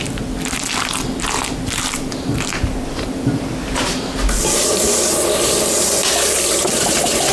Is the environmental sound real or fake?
real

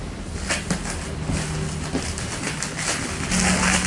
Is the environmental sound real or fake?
real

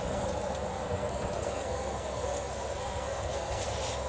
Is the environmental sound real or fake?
fake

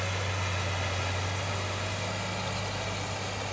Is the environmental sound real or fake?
real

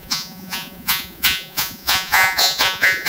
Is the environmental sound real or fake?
fake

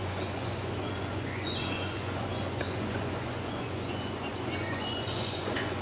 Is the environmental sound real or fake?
fake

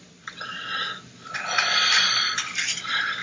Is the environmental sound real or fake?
real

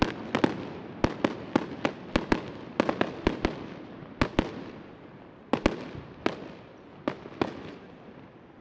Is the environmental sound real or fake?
real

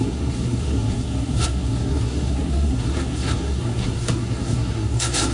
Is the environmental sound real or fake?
fake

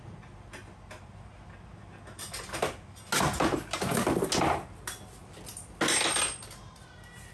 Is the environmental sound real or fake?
real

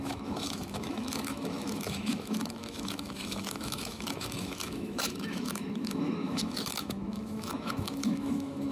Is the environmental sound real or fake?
fake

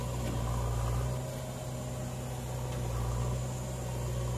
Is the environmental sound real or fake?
real